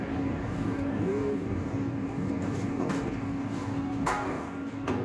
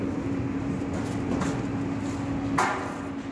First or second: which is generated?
first